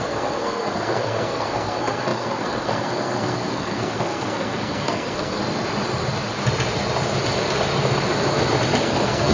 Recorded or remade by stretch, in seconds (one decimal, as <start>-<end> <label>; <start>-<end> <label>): 0.0-5.4 remade; 5.4-8.8 recorded; 8.8-9.3 remade